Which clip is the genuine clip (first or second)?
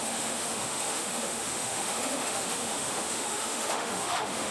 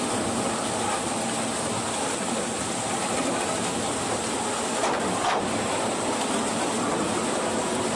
second